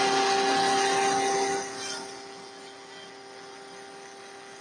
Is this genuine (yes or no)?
yes